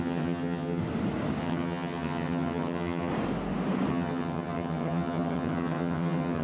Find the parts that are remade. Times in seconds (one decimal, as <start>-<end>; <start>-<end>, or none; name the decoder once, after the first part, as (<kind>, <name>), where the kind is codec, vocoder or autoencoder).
0.0-0.8 (vocoder, HiFi-GAN); 1.4-3.1; 3.9-6.4